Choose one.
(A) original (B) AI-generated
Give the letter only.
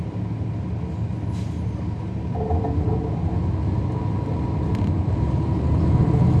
A